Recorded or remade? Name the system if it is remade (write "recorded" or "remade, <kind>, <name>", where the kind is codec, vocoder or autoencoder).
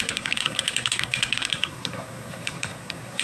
remade, codec, SNAC